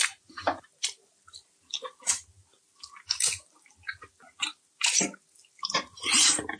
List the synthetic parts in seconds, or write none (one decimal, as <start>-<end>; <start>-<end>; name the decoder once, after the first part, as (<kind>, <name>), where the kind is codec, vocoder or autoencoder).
none